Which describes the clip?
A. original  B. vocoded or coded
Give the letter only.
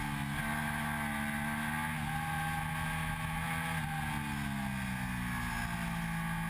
A